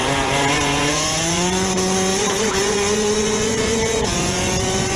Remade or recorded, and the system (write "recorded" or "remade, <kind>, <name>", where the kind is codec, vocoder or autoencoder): remade, vocoder, Vocos